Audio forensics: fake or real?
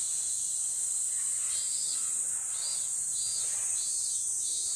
real